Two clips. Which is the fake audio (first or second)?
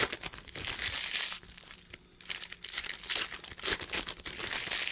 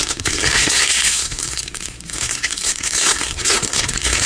second